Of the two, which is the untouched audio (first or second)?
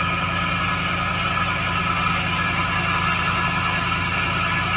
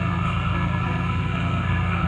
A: first